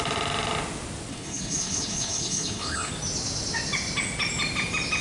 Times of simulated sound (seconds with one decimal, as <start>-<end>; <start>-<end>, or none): 1.1-2.9